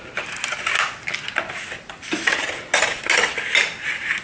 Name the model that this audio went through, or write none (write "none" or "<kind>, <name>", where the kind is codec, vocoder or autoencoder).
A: none